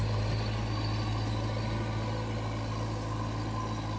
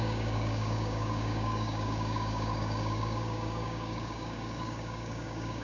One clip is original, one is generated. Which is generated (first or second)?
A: second